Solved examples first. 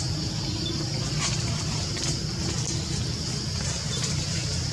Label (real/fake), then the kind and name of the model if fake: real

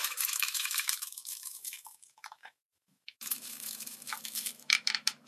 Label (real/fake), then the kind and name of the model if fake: fake, autoencoder, DAC-VAE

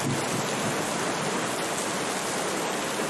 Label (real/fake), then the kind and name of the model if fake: real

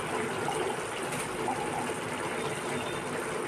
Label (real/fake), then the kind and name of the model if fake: real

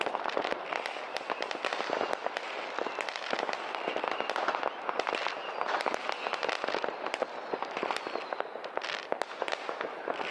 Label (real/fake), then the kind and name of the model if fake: real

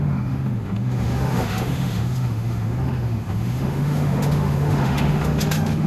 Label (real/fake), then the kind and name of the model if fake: fake, autoencoder, DAC-VAE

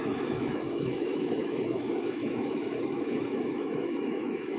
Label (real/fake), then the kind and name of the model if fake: fake, autoencoder, DAC-VAE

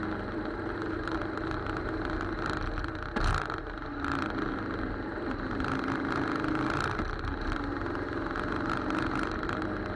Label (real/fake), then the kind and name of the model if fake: real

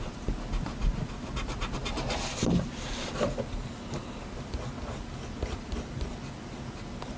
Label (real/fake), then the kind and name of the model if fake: real